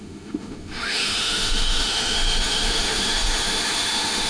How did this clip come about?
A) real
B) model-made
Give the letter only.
B